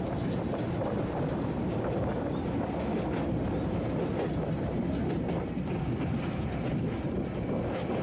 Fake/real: real